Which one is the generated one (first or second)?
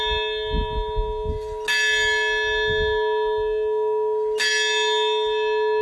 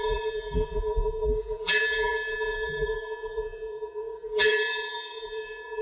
second